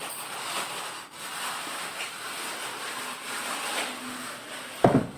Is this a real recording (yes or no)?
yes